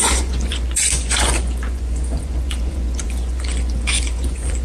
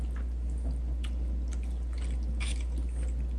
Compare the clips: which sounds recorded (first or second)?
second